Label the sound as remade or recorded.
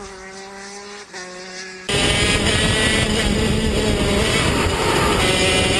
recorded